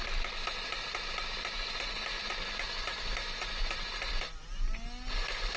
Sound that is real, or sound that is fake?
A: real